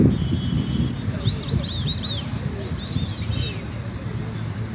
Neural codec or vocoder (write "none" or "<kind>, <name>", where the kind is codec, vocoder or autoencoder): none